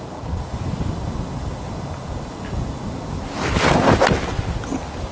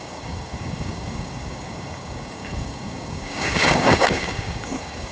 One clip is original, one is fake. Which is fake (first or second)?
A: second